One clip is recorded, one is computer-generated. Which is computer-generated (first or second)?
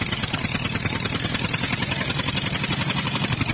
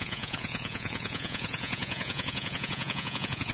second